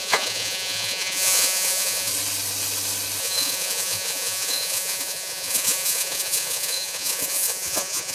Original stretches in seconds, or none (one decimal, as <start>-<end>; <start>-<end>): 2.1-3.2